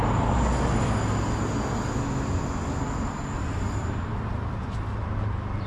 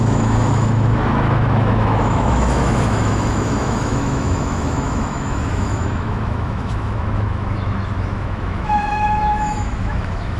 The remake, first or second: second